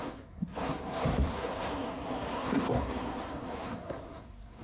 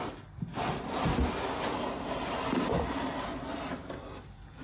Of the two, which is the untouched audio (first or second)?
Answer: second